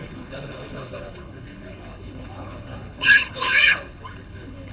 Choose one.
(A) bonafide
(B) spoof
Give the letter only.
B